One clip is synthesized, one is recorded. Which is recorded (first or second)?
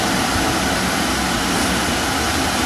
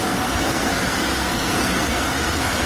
first